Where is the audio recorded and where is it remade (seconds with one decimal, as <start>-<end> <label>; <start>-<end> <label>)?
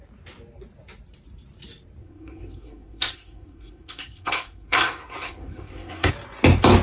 0.0-2.0 recorded; 2.0-6.1 remade; 6.1-6.8 recorded